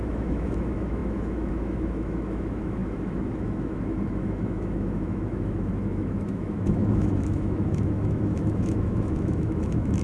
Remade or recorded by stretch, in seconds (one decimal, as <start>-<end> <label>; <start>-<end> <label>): 0.0-10.0 remade